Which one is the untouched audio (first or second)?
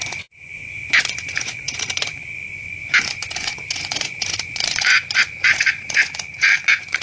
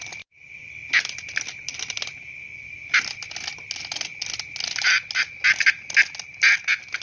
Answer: second